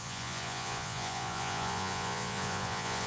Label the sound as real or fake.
fake